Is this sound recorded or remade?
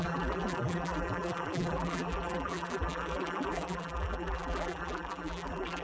remade